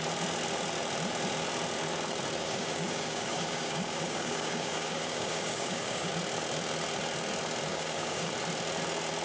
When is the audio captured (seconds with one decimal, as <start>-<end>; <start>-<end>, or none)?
0.0-2.4; 6.1-7.7; 8.3-9.2